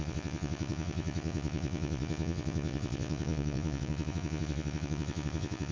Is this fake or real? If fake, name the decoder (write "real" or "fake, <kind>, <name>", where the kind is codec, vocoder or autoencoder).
fake, vocoder, Vocos